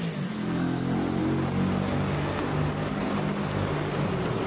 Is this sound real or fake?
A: real